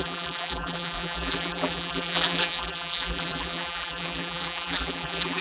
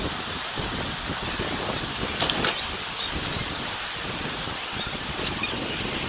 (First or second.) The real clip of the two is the second